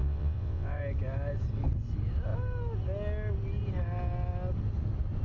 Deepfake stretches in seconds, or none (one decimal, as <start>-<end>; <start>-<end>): 0.0-0.8